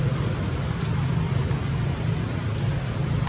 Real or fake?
real